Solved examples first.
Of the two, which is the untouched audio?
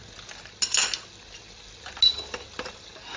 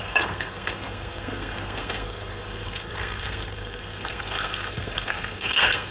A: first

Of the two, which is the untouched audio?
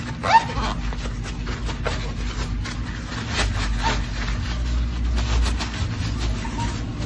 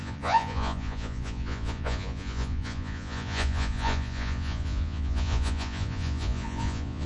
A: first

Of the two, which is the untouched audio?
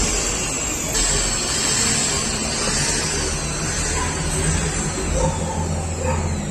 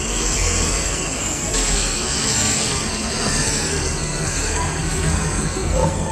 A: first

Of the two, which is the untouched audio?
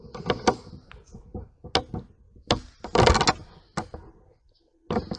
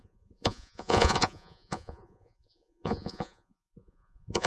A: first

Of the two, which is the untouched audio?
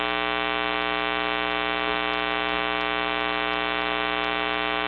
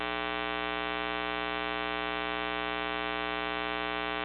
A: second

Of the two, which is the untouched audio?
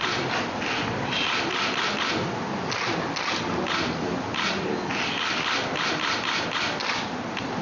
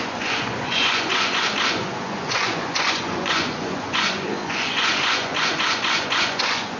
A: first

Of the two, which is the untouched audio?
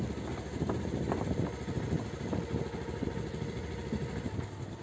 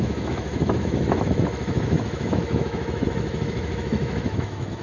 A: first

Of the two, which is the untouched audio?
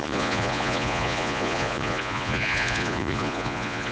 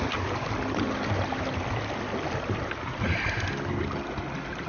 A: second